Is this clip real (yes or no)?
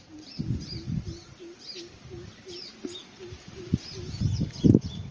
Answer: yes